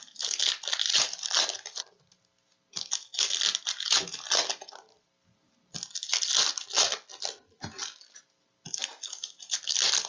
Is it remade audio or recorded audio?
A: recorded